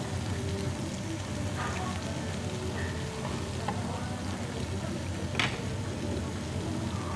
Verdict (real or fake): real